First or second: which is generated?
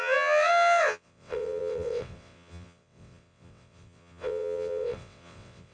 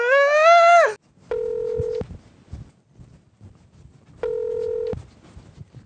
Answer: first